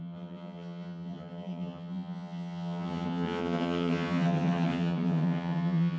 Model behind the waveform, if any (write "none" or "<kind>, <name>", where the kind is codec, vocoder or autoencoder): vocoder, HiFi-GAN